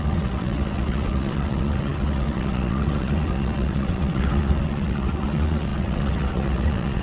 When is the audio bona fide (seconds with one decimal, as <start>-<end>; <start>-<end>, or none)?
none

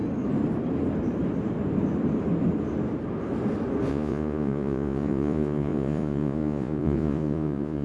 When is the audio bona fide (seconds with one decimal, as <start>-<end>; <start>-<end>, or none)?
0.0-3.9

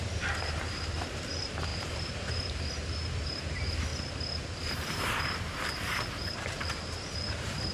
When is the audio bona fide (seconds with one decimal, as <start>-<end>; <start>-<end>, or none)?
3.9-4.7

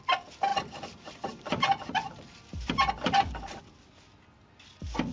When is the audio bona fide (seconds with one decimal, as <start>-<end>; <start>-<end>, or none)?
0.0-0.5; 3.6-5.1

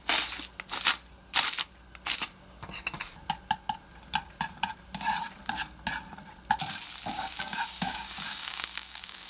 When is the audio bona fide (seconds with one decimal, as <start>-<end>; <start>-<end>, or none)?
0.0-7.1

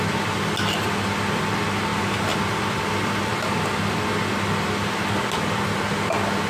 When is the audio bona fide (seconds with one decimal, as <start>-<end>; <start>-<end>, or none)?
0.0-1.9; 2.5-6.5

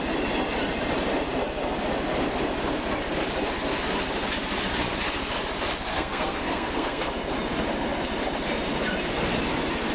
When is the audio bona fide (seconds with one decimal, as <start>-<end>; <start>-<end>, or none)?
0.0-5.9; 7.1-9.9